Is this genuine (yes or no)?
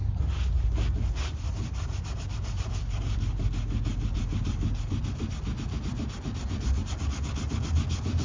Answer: yes